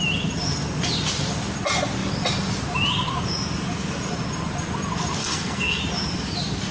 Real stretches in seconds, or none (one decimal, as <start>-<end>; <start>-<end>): 0.0-5.2; 5.8-6.7